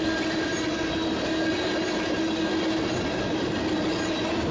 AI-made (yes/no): no